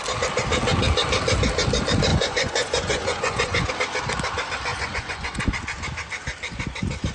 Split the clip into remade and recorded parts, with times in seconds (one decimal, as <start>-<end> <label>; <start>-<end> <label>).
0.0-2.1 recorded; 2.1-3.7 remade; 3.7-4.7 recorded; 4.7-5.5 remade; 5.5-7.1 recorded